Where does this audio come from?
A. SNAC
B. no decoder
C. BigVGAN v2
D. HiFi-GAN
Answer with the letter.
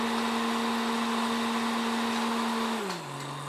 B